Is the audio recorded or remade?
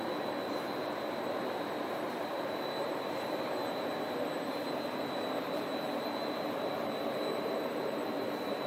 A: remade